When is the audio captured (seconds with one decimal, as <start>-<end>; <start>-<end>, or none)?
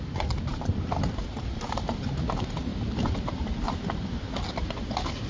0.0-0.5; 2.1-2.7; 3.7-5.3